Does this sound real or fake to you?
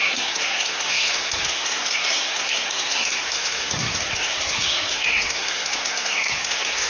fake